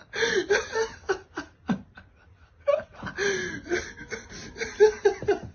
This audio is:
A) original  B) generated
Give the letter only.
A